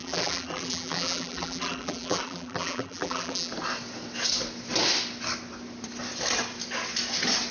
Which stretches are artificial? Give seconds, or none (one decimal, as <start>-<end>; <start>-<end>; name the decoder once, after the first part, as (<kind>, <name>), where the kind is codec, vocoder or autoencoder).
0.0-3.5 (vocoder, BigVGAN v2)